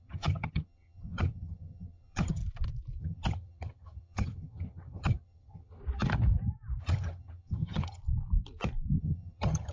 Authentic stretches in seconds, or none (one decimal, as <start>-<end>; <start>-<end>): 2.4-3.0; 5.8-6.8; 8.0-9.0